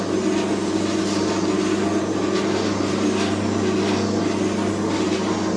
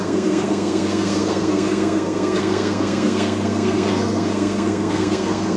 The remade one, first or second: second